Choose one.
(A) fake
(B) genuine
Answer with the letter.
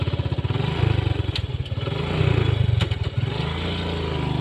B